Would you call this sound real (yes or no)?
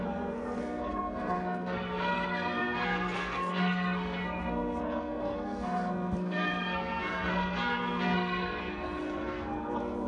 no